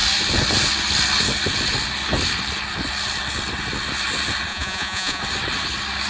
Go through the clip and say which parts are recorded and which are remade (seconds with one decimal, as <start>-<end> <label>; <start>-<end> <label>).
0.0-4.5 recorded; 4.5-5.2 remade; 5.2-6.1 recorded